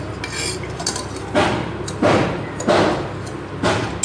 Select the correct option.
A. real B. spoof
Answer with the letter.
A